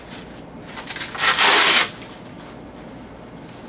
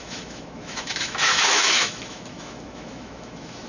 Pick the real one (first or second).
first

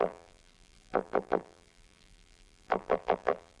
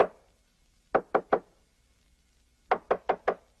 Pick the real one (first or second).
second